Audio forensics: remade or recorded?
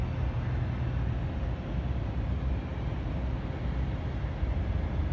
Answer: recorded